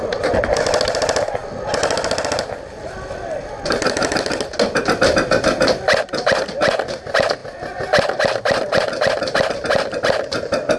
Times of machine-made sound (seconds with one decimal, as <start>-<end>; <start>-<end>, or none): none